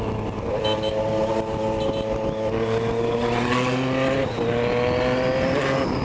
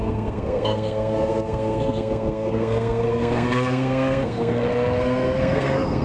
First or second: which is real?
first